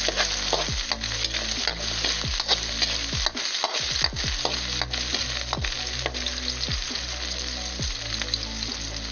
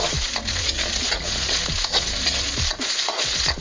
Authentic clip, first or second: first